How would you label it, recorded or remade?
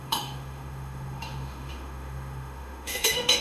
remade